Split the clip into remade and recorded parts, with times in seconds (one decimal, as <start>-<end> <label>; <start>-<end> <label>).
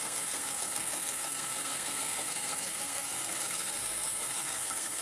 0.0-5.0 remade